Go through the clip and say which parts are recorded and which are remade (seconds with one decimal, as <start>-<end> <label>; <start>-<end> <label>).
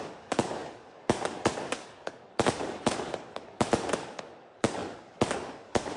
0.0-6.0 remade